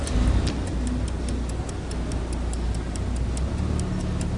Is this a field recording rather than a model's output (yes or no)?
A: yes